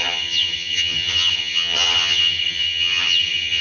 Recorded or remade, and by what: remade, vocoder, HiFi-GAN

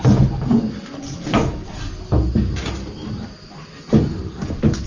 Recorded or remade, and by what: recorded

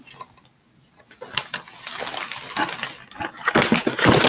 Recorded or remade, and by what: recorded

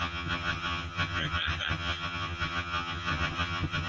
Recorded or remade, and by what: remade, vocoder, HiFi-GAN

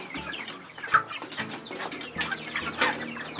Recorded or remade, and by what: recorded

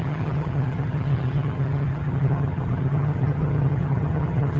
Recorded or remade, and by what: remade, vocoder, HiFi-GAN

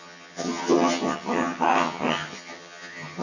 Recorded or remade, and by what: remade, vocoder, HiFi-GAN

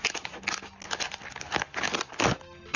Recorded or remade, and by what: recorded